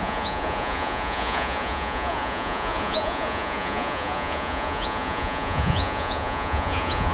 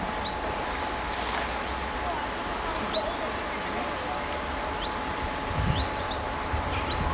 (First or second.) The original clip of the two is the second